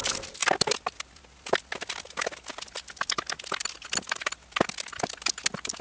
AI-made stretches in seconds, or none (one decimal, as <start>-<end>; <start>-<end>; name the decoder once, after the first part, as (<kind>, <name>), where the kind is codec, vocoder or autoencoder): none